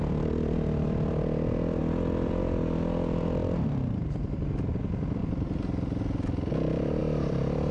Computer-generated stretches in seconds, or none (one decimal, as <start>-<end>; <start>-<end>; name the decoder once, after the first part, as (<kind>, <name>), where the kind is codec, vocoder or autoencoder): 0.0-1.8 (vocoder, BigVGAN v2); 2.4-3.4; 4.7-5.2; 6.5-7.7